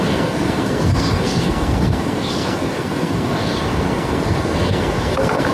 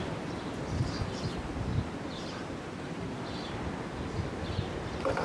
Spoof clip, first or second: first